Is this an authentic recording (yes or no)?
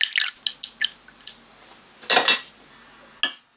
yes